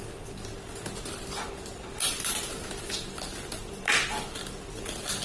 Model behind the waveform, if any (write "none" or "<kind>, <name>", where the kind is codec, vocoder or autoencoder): none